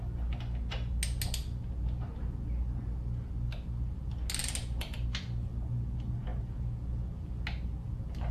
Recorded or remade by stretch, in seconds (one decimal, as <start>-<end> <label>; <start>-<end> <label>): 0.0-8.3 recorded